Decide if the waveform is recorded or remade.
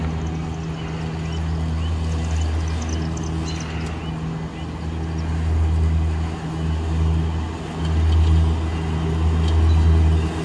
recorded